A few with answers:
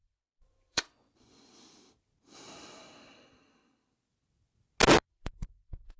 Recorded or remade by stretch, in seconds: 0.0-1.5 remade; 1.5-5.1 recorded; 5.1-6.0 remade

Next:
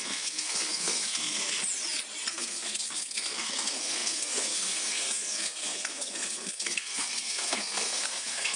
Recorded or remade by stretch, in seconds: 0.0-1.6 remade; 1.6-2.3 recorded; 2.3-8.6 remade

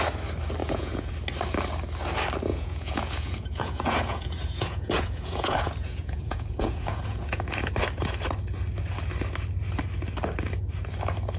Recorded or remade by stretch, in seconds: 0.0-0.6 recorded; 0.6-1.1 remade; 1.1-2.5 recorded; 2.5-7.7 remade; 7.7-11.4 recorded

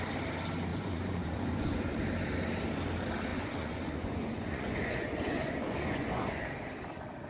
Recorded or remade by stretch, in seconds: 0.0-0.7 recorded; 0.7-2.0 remade; 2.0-3.3 recorded; 3.3-6.4 remade; 6.4-7.3 recorded

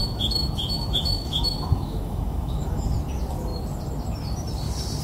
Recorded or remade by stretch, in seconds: 0.0-2.9 remade; 2.9-5.0 recorded

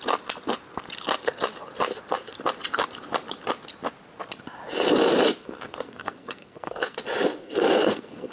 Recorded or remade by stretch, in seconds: 0.0-5.4 recorded; 5.4-7.0 remade; 7.0-7.4 recorded; 7.4-8.3 remade

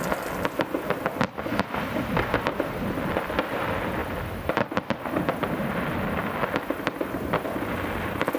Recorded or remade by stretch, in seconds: 0.0-8.4 recorded

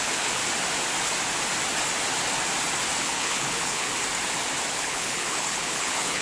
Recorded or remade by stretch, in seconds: 0.0-0.4 remade; 0.4-3.0 recorded; 3.0-3.9 remade; 3.9-4.7 recorded; 4.7-6.2 remade